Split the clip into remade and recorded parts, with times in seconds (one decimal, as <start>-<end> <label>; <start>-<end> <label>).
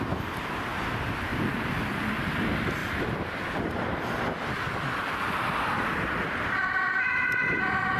0.0-2.8 recorded; 2.8-7.0 remade; 7.0-8.0 recorded